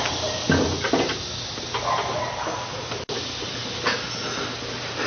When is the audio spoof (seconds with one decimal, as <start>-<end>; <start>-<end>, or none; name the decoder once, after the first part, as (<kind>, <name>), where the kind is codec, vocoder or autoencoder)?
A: none